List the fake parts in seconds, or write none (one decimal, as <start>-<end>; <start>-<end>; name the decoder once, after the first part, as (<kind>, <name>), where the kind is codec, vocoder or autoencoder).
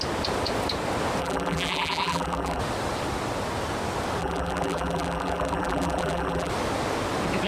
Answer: 1.2-2.6 (vocoder, BigVGAN v2); 4.2-6.5